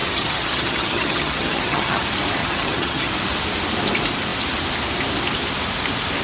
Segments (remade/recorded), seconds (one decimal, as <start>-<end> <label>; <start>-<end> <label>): 0.0-2.0 remade; 2.0-2.4 recorded; 2.4-3.1 remade; 3.1-6.2 recorded